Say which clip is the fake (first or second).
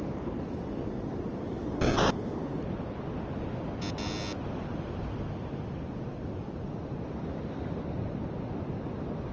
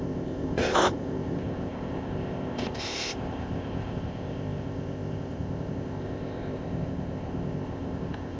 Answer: second